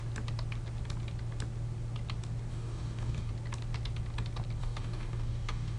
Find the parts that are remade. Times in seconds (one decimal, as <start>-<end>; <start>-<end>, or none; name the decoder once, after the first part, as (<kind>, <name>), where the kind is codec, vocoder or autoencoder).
2.5-3.3 (codec, DAC); 4.6-5.8